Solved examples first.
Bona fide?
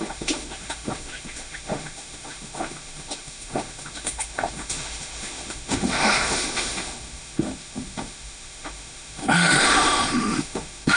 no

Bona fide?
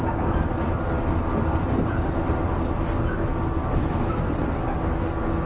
yes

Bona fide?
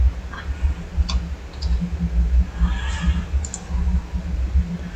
yes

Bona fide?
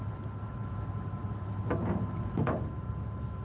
yes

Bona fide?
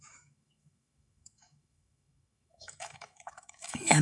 no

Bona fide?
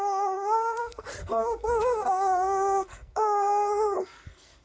no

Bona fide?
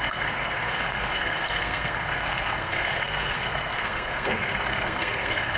no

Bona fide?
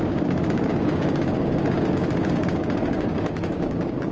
no